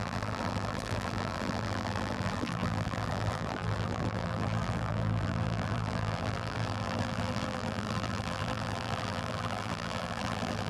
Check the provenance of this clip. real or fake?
fake